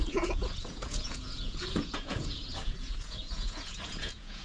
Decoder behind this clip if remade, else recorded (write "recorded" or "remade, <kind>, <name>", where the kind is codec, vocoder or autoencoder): remade, vocoder, Vocos